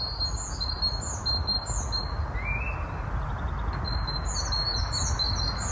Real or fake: real